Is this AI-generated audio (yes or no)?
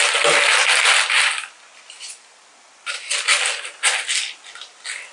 no